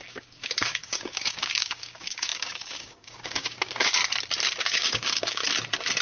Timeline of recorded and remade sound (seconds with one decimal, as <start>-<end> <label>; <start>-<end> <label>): 0.0-4.0 remade; 4.0-4.6 recorded; 4.6-5.4 remade; 5.4-6.0 recorded